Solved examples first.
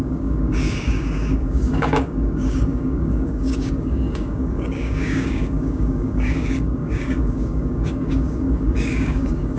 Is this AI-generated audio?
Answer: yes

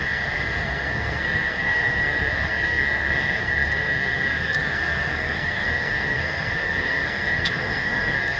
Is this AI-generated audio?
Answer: yes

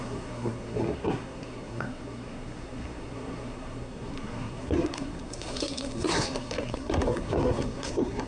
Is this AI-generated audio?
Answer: yes